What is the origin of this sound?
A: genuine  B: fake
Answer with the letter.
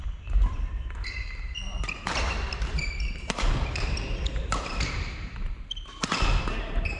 B